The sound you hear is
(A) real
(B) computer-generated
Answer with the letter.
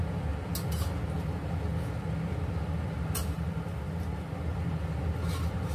A